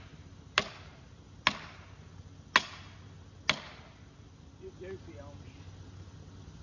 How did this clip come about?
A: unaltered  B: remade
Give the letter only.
A